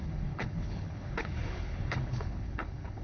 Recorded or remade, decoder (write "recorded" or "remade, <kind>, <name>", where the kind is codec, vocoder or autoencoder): remade, codec, HILCodec